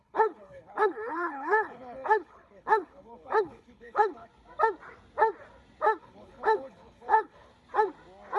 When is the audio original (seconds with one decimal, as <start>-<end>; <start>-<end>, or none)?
4.3-6.0; 7.5-8.4